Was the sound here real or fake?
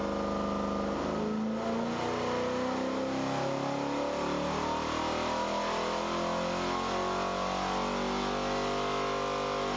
real